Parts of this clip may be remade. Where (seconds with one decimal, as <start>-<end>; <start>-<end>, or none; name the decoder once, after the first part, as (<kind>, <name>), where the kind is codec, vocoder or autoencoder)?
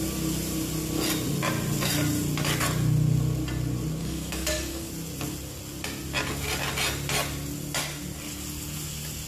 4.0-4.9 (codec, DAC)